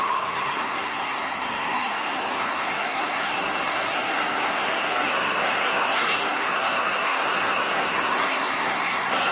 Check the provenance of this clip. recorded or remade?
remade